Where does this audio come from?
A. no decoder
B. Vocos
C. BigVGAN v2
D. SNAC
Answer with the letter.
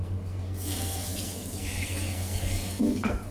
D